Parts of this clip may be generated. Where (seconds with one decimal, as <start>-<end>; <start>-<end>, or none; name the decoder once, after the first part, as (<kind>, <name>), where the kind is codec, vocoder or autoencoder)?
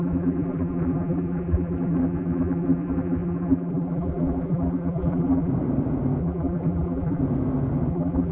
0.0-5.5 (vocoder, BigVGAN v2); 6.2-7.2; 7.9-8.3